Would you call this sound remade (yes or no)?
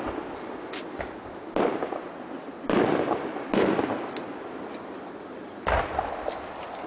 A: no